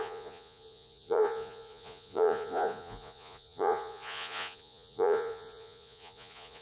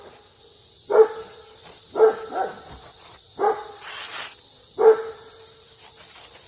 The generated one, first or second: first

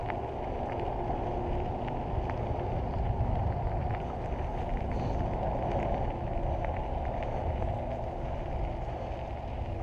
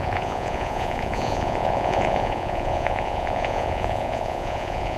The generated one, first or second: second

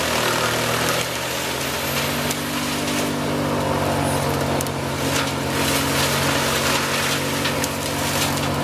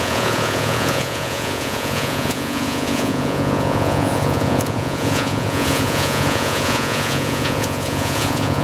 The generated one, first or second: second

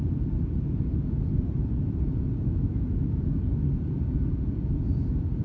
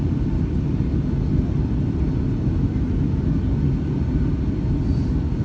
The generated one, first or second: first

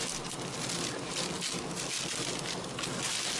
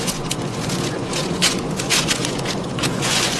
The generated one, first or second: second